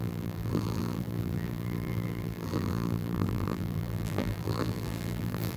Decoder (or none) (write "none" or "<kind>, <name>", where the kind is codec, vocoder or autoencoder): vocoder, BigVGAN v2